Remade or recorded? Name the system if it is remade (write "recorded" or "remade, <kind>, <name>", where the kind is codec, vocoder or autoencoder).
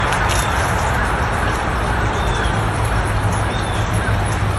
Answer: recorded